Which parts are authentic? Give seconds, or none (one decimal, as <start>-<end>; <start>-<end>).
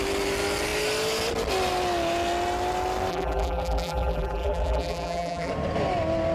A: 0.0-3.1; 5.5-6.3